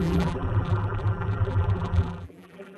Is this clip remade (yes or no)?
yes